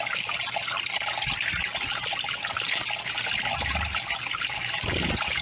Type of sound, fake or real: real